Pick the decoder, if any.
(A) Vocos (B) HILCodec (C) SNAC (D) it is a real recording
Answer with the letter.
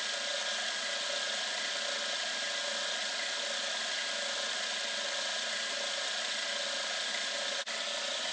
D